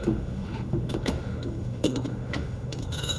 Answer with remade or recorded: remade